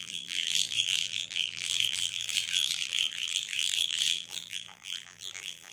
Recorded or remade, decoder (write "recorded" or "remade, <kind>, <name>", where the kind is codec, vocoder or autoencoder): remade, vocoder, BigVGAN v2